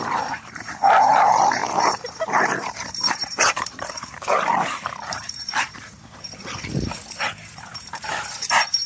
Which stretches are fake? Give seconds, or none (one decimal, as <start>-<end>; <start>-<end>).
0.0-8.9